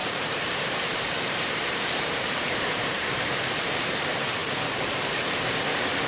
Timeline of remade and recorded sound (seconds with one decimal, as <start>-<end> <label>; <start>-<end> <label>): 0.0-3.7 remade; 3.7-6.1 recorded